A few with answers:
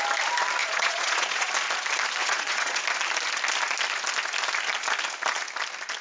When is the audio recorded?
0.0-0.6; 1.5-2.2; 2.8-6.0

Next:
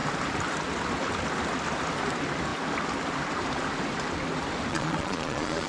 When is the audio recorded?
0.0-4.7

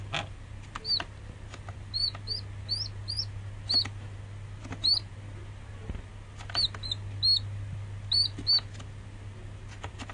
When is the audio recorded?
0.0-10.1

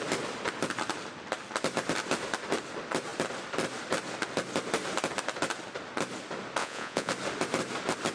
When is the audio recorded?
0.0-6.6; 7.1-8.1

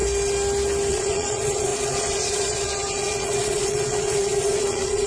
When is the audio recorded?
0.0-0.9